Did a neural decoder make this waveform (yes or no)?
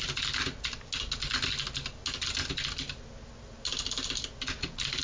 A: no